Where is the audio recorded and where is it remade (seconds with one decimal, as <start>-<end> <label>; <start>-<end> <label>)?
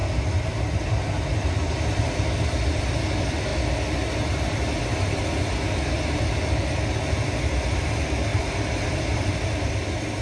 0.0-2.8 remade; 2.8-8.3 recorded; 8.3-9.7 remade; 9.7-10.2 recorded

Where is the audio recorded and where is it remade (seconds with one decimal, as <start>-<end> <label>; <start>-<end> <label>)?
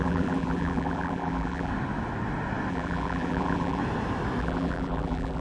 0.0-1.7 remade; 1.7-2.7 recorded; 2.7-3.8 remade; 3.8-4.4 recorded; 4.4-5.4 remade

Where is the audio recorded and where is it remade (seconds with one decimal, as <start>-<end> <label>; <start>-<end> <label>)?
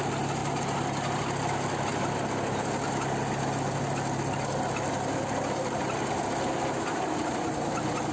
0.0-8.1 recorded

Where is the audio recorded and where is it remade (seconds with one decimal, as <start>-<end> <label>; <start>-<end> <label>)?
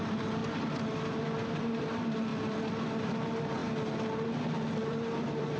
0.0-0.4 remade; 0.4-1.2 recorded; 1.2-2.3 remade; 2.3-3.0 recorded; 3.0-5.6 remade